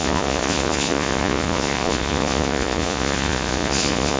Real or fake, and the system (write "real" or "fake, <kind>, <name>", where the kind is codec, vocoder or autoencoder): fake, vocoder, Vocos